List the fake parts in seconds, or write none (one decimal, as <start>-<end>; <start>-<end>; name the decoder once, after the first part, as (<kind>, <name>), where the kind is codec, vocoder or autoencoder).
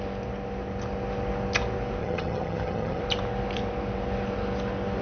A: 2.0-3.0 (vocoder, HiFi-GAN)